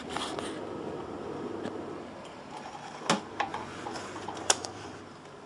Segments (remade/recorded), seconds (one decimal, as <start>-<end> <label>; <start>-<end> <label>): 0.0-3.5 recorded; 3.5-5.0 remade; 5.0-5.5 recorded